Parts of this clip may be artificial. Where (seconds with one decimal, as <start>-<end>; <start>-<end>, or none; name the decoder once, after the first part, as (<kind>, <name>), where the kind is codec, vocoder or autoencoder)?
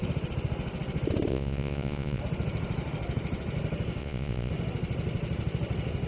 1.3-2.2 (vocoder, Vocos); 4.0-4.5